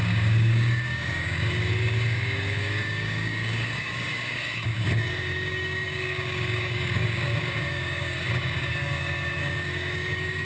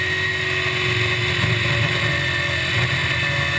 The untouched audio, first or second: second